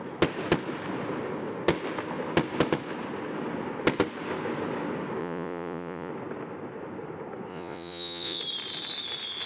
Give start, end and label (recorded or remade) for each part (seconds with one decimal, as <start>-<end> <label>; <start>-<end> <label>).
0.0-5.2 recorded; 5.2-6.1 remade; 6.1-7.5 recorded; 7.5-8.4 remade; 8.4-9.5 recorded